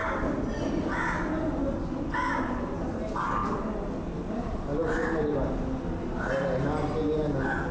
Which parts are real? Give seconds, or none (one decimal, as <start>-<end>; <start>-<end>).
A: 0.0-7.7